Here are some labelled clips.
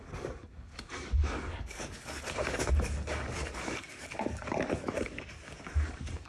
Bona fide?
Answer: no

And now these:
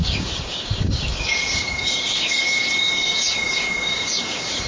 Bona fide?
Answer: no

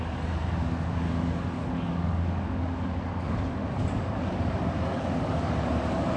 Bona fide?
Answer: no